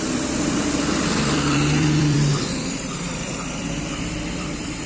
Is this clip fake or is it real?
fake